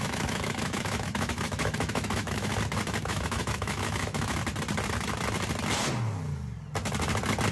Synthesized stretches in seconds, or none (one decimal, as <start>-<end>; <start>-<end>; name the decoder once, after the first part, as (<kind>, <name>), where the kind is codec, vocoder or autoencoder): 0.0-2.5 (autoencoder, DAC-VAE); 3.0-4.4